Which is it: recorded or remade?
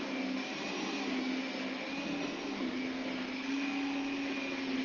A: recorded